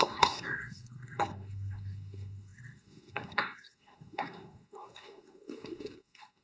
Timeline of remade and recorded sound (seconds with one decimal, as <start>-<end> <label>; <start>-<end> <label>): 0.0-6.4 remade